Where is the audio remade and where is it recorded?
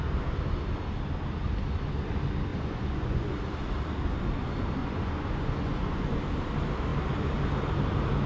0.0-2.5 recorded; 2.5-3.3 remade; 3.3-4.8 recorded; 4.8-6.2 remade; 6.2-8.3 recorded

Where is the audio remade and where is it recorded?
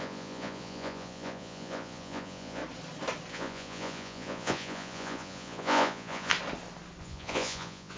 0.0-2.6 remade; 2.6-3.3 recorded; 3.3-6.3 remade; 6.3-7.0 recorded; 7.0-8.0 remade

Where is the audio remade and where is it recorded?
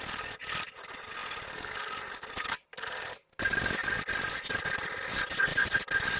0.0-6.2 recorded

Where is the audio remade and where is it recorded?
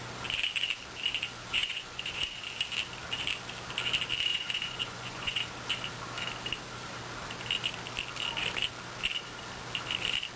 0.0-1.6 recorded; 1.6-2.4 remade; 2.4-4.3 recorded; 4.3-5.4 remade; 5.4-10.4 recorded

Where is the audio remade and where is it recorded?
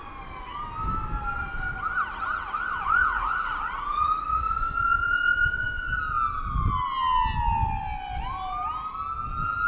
0.0-3.1 recorded; 3.1-4.5 remade; 4.5-9.7 recorded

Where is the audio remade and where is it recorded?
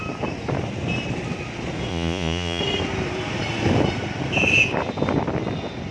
0.0-1.9 recorded; 1.9-2.6 remade; 2.6-5.9 recorded